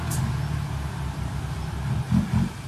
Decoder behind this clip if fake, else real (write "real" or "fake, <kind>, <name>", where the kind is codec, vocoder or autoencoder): real